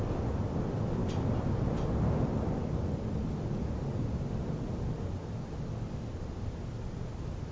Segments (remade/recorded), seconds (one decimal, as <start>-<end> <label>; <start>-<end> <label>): 0.0-7.5 recorded